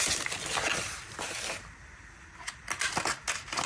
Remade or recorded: recorded